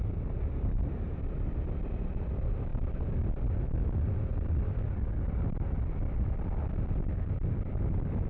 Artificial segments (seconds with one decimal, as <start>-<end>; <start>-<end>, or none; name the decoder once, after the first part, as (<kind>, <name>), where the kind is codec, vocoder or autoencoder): none